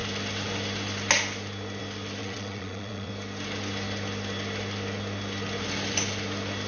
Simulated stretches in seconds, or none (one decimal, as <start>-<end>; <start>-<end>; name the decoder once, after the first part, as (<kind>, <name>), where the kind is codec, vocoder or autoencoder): 2.2-3.1 (vocoder, WaveNeXt)